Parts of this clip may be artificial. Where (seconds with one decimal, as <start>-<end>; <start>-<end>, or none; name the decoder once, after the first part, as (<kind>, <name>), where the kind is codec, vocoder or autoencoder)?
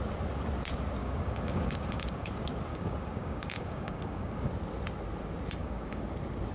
1.0-2.3 (codec, DAC); 2.7-4.5; 5.6-6.1